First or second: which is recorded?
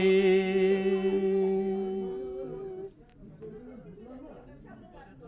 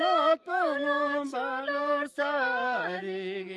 first